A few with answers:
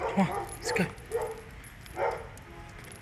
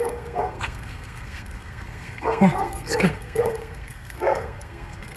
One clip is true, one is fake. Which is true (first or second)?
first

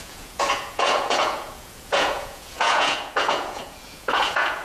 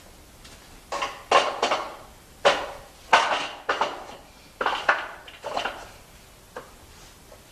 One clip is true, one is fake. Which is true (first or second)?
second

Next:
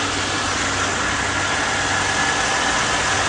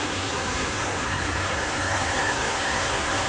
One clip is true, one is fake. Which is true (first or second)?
first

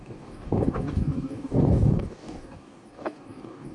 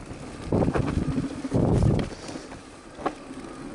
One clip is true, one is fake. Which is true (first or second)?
second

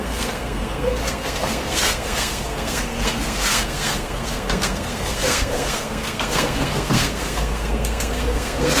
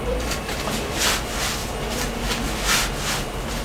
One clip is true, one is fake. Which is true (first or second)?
second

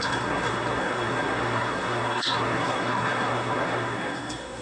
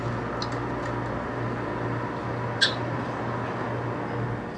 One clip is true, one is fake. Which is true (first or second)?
second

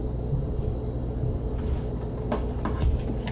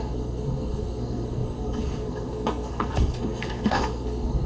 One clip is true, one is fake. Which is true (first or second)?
first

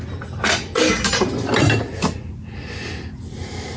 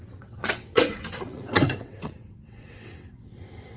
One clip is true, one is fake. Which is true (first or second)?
first